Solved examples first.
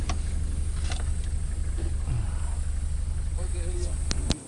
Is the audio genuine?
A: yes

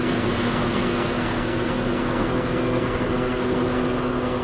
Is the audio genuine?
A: no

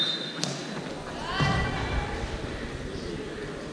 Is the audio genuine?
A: yes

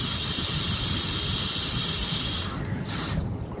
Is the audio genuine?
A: yes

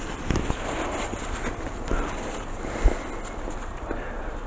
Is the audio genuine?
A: yes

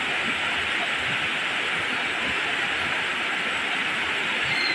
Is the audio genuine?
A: yes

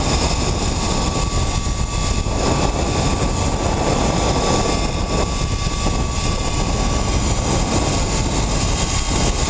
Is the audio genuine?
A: yes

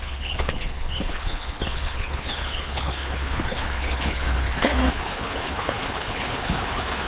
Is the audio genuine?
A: no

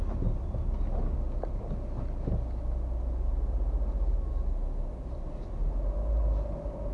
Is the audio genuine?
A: yes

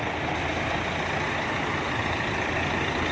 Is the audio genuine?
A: yes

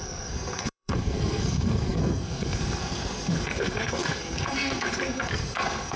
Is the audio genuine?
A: no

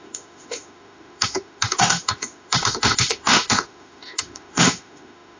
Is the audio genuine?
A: no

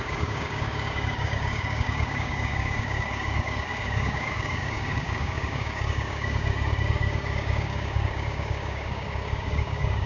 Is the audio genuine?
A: no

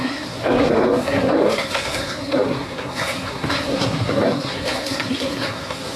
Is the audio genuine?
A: no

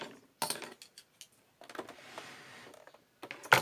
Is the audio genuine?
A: yes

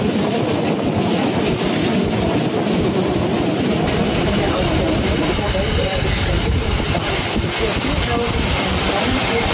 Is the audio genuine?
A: yes